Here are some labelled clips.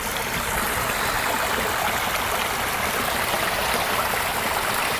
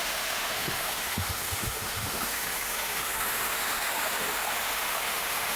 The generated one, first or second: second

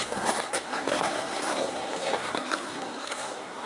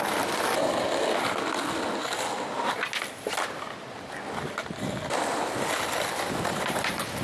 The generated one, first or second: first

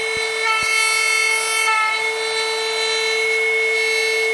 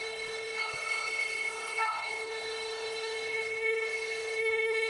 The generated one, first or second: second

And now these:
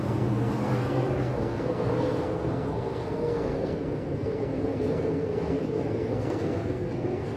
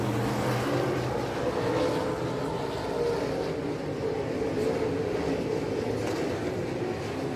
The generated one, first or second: first